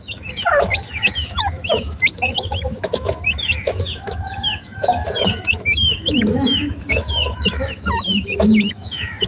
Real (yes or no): no